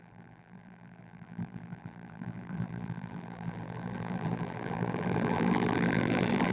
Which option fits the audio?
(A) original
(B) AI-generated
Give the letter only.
B